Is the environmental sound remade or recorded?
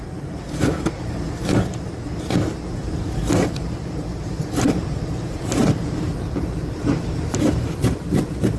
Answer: remade